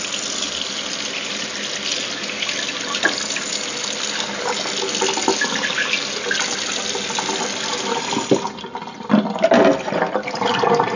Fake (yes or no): no